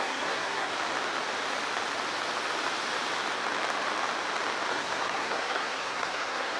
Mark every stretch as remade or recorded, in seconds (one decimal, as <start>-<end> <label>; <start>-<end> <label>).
0.0-0.7 remade; 0.7-4.7 recorded; 4.7-6.6 remade